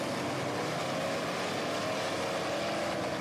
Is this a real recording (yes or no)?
yes